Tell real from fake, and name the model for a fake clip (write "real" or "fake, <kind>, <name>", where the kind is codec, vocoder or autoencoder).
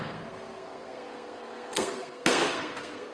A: fake, codec, SNAC